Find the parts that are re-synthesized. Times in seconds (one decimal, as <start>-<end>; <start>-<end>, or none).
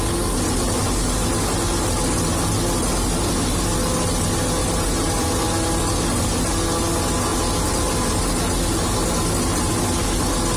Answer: 4.6-5.2